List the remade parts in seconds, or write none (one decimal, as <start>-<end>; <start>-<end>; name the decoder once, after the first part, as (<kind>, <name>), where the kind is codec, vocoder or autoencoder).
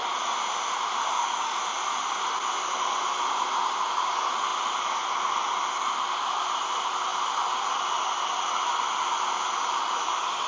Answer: 1.1-1.6 (autoencoder, DAC-VAE)